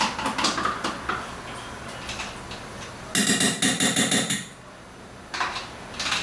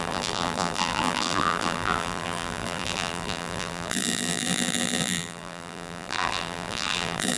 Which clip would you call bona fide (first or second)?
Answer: first